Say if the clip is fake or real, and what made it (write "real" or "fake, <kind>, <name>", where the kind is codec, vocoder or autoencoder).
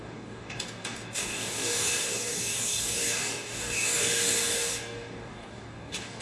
fake, codec, DAC